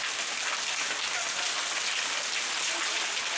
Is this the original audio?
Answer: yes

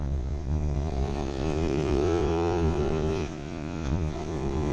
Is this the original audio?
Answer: no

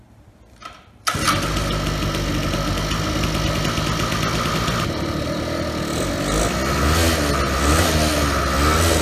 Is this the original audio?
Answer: yes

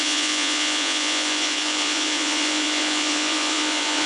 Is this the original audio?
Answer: no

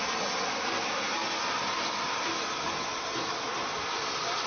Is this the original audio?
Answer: yes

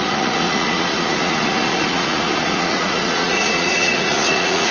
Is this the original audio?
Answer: no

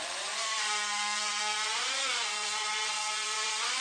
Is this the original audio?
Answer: no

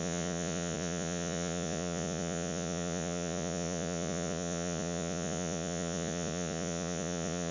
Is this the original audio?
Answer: no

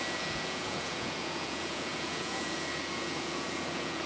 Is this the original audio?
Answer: no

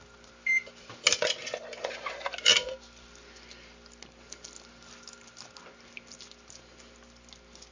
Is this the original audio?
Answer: yes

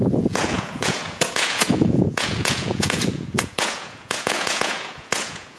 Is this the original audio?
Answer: no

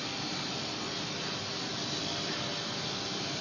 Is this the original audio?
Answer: yes